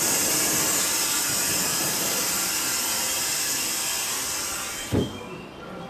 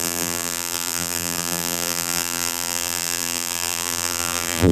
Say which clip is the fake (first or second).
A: second